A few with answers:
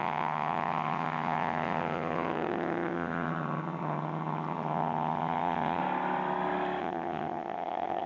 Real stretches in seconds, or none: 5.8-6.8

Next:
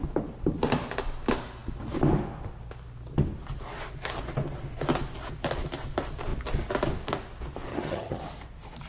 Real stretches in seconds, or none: 0.0-7.7; 8.2-8.9

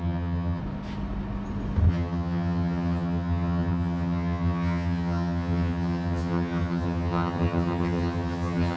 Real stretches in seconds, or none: 0.6-1.9

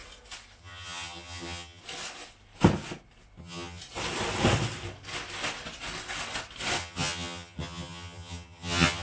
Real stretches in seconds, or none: 0.0-0.6; 1.8-3.4; 3.8-6.8

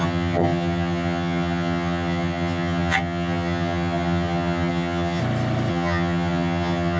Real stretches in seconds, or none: 5.2-5.7

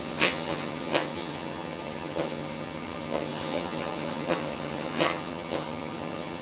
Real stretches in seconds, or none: none